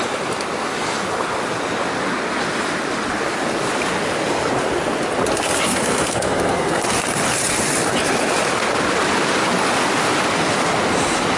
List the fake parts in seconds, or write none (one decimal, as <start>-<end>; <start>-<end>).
5.7-6.8